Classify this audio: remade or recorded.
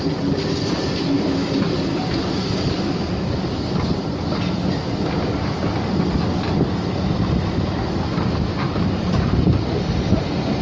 recorded